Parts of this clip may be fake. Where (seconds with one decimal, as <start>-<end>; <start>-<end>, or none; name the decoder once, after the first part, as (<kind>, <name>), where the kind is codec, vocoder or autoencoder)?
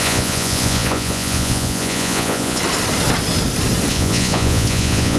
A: 0.0-2.6 (vocoder, Vocos); 3.9-5.2